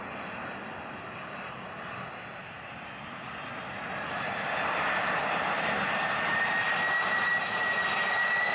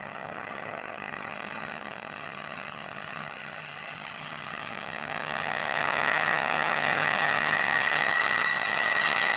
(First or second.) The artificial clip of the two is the second